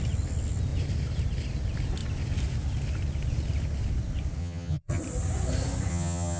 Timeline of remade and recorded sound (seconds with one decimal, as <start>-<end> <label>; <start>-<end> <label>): 0.0-4.4 recorded; 4.4-5.0 remade; 5.0-5.9 recorded; 5.9-6.4 remade

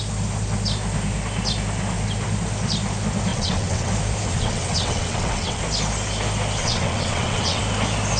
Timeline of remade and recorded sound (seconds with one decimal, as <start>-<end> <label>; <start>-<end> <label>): 0.0-3.3 recorded; 3.3-3.9 remade; 3.9-4.3 recorded; 4.3-5.6 remade; 5.6-6.6 recorded; 6.6-7.6 remade; 7.6-8.2 recorded

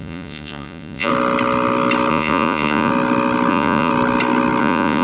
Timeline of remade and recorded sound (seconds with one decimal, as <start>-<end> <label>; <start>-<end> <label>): 0.0-1.1 remade; 1.1-2.1 recorded; 2.1-2.9 remade; 2.9-3.5 recorded; 3.5-3.9 remade; 3.9-4.6 recorded; 4.6-5.0 remade

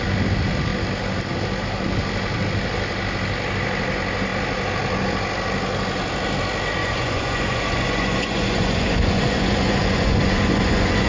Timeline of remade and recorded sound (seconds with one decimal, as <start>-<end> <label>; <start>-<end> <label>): 0.0-6.8 recorded; 6.8-11.1 remade

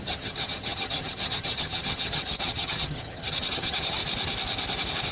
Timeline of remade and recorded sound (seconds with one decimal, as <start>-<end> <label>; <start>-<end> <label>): 0.0-4.0 remade; 4.0-5.1 recorded

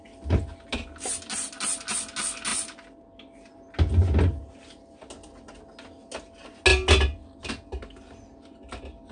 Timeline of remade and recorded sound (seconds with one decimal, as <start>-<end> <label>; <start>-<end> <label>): 0.0-9.1 recorded

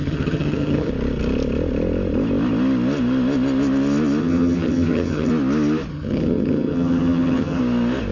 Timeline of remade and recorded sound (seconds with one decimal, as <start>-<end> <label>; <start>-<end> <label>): 0.0-0.9 remade; 0.9-4.2 recorded; 4.2-5.3 remade; 5.3-5.9 recorded; 5.9-7.6 remade; 7.6-8.1 recorded

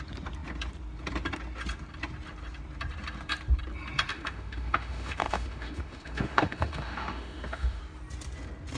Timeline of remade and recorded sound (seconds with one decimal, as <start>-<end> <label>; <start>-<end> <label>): 0.0-4.1 recorded; 4.1-7.8 remade; 7.8-8.8 recorded